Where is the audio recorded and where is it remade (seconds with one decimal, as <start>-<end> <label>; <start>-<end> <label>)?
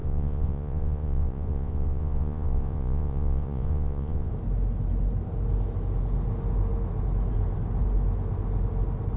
0.0-4.3 remade; 4.3-9.2 recorded